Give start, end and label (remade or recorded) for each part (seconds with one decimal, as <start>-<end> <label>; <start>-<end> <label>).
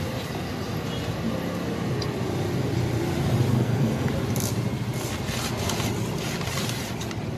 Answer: 0.0-3.5 recorded; 3.5-4.1 remade; 4.1-7.4 recorded